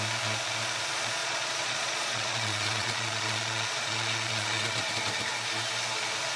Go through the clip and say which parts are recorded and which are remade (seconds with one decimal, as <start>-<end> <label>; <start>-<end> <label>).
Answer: 0.0-1.2 recorded; 1.2-4.9 remade; 4.9-6.4 recorded